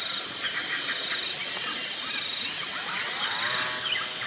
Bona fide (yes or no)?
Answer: yes